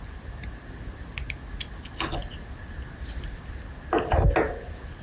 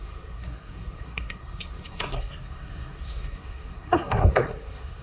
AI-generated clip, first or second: second